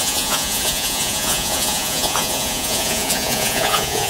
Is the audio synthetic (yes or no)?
yes